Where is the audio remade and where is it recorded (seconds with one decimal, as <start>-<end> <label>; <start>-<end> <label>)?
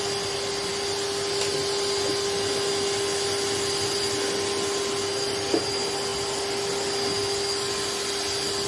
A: 0.0-8.7 recorded